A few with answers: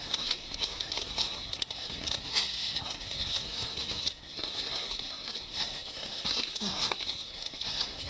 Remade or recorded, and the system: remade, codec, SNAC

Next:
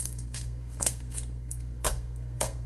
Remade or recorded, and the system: remade, codec, SNAC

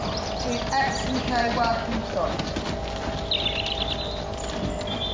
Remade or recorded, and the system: recorded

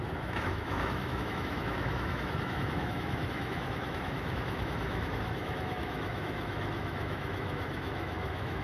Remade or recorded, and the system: remade, autoencoder, DAC-VAE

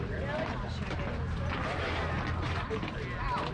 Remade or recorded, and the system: recorded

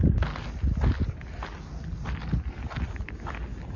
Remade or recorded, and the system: recorded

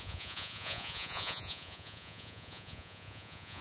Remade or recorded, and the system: remade, vocoder, Vocos